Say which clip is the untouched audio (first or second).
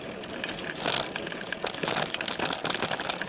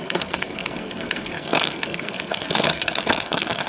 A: first